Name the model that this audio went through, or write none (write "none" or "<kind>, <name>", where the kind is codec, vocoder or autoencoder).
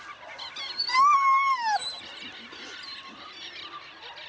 none